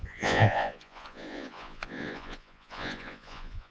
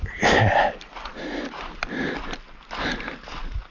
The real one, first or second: second